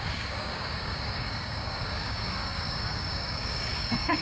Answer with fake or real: fake